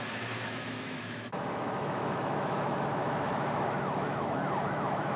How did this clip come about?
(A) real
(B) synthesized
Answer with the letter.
B